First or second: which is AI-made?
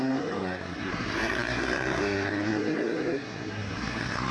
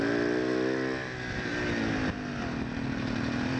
first